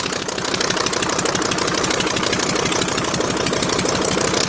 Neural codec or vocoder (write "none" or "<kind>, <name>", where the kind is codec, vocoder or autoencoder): none